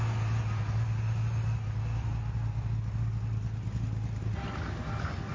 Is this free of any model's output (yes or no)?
yes